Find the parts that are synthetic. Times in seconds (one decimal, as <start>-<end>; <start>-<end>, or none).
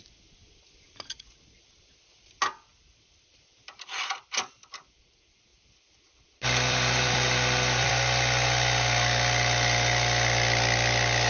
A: 2.7-5.0; 5.5-7.9